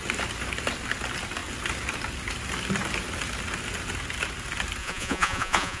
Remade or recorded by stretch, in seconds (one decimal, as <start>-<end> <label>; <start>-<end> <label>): 0.0-4.8 recorded; 4.8-5.8 remade